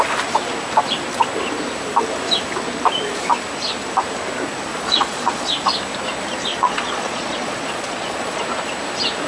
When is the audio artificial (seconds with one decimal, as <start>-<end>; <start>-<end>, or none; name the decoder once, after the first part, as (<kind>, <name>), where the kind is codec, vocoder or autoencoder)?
4.7-5.5 (vocoder, Vocos); 6.5-8.4